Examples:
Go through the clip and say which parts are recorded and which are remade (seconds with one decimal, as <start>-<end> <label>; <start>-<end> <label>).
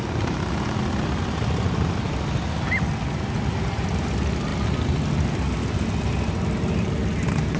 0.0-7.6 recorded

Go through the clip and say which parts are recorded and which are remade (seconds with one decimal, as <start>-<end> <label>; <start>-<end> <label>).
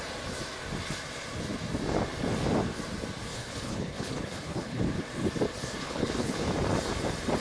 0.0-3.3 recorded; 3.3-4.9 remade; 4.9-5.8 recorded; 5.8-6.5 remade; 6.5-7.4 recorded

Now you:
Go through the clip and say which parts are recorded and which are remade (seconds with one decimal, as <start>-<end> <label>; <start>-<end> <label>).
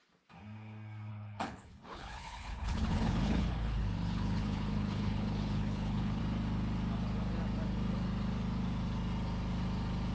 0.0-1.1 recorded; 1.1-6.2 remade; 6.2-10.1 recorded